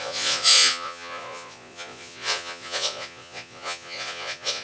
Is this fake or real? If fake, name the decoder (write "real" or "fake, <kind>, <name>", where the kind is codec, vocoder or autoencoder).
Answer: fake, vocoder, Vocos